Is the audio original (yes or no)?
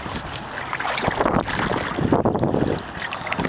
yes